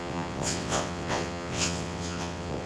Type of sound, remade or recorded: remade